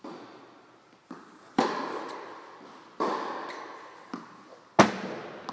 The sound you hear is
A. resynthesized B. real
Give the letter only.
B